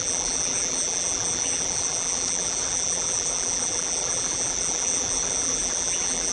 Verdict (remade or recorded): remade